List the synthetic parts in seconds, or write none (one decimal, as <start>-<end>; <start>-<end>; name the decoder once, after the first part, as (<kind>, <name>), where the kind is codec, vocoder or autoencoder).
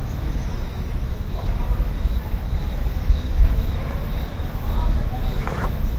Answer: 0.0-6.0 (autoencoder, DAC-VAE)